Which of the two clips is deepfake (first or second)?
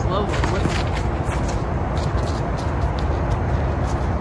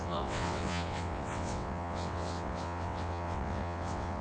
second